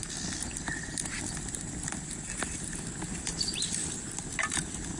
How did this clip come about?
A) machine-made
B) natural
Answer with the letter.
B